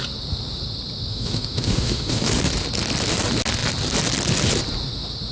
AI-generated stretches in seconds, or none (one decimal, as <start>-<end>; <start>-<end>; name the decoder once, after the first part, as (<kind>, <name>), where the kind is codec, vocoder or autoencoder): 1.1-2.3 (autoencoder, DAC-VAE)